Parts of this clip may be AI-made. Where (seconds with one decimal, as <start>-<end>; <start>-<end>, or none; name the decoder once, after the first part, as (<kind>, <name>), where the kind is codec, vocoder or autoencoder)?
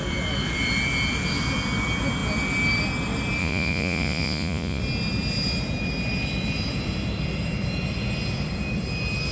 3.4-4.8 (vocoder, Vocos)